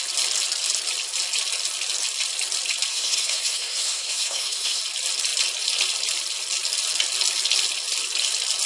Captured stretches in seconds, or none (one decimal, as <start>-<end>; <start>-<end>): 0.0-2.9; 4.8-8.7